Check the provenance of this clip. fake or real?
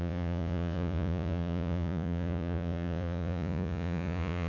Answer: fake